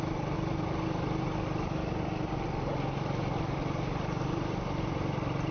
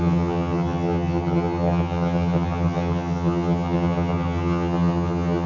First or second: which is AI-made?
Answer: second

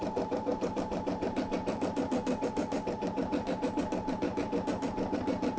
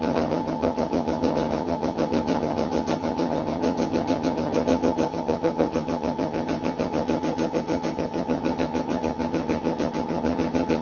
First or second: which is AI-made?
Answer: second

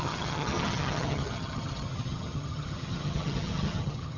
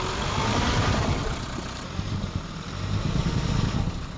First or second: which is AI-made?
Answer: first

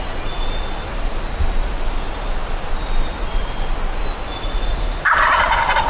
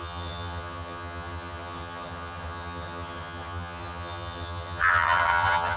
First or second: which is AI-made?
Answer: second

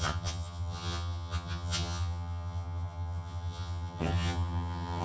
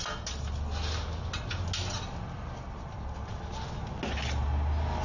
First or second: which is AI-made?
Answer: first